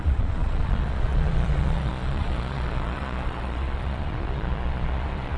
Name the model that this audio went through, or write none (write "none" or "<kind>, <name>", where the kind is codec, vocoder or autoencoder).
vocoder, Vocos